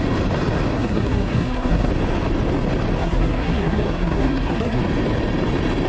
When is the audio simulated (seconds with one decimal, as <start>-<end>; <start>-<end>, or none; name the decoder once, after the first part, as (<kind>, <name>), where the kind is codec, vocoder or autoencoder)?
0.7-1.9 (codec, SNAC); 3.0-4.8